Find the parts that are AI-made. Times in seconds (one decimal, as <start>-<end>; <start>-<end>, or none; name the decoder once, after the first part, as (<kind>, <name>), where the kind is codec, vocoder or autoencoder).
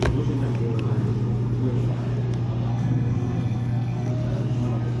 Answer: 2.7-4.1 (codec, SNAC)